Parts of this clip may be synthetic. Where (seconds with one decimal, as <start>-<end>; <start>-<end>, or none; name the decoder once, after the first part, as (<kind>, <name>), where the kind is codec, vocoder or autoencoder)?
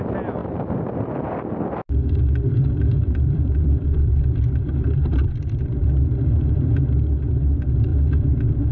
0.4-1.1 (vocoder, BigVGAN v2); 2.6-6.8; 7.9-8.7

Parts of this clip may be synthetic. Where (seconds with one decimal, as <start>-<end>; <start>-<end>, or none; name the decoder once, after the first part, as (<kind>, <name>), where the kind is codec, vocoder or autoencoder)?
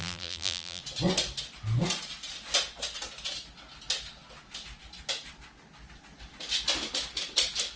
0.0-0.8 (vocoder, BigVGAN v2)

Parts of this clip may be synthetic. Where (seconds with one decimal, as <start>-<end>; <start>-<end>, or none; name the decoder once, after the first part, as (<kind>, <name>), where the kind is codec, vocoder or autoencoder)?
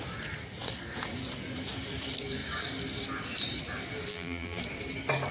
4.1-4.6 (vocoder, BigVGAN v2)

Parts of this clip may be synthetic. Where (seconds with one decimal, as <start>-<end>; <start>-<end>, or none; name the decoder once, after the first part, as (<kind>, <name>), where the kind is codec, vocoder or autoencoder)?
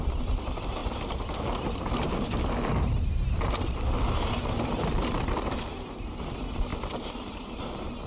none